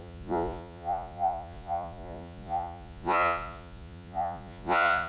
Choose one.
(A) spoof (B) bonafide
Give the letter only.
A